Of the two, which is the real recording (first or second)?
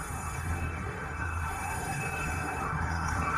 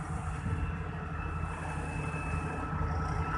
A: second